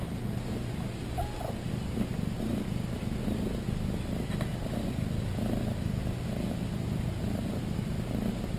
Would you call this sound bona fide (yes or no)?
yes